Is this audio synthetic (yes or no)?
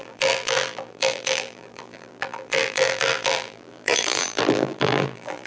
yes